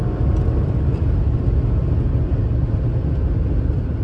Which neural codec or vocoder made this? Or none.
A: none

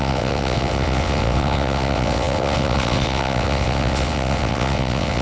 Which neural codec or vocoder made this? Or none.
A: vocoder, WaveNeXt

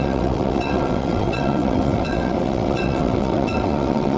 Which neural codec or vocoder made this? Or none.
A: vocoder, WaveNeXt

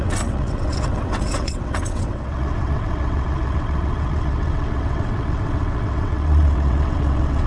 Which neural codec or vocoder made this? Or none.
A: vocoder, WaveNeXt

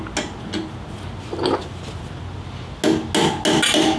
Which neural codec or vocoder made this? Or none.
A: none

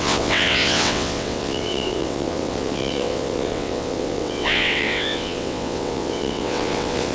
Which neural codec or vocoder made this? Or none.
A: vocoder, WaveNeXt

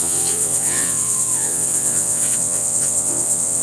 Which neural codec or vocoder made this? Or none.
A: vocoder, WaveNeXt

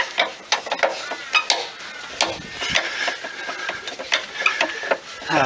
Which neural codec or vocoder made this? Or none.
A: none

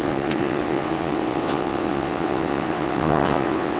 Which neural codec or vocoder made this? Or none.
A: vocoder, WaveNeXt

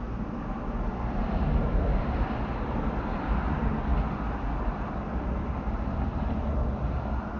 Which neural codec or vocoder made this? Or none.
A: none